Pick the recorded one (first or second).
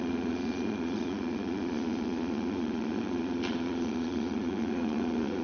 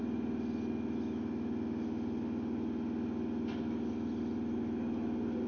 second